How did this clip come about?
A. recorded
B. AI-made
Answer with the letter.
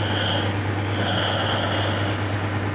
A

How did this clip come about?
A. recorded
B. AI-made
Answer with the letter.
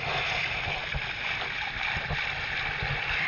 A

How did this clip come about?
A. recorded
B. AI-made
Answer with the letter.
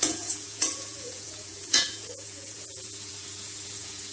B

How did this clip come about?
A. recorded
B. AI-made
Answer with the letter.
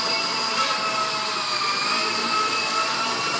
A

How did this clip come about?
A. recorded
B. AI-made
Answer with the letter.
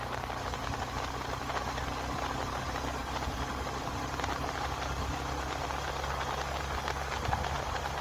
A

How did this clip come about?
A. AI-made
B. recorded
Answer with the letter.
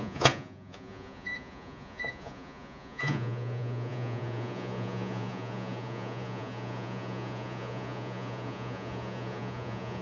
A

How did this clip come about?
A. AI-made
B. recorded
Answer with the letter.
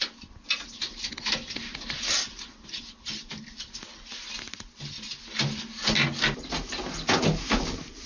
B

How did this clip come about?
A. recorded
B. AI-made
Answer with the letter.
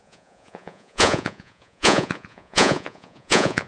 B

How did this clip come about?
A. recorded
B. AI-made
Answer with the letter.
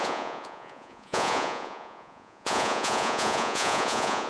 B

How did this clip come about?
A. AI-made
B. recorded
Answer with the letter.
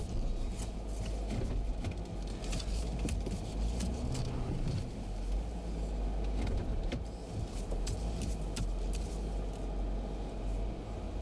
B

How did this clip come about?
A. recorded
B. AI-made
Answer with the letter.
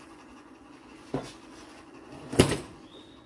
B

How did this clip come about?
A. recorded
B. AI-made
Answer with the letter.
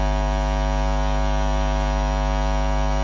A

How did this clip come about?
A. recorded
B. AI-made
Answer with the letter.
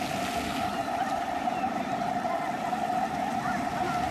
A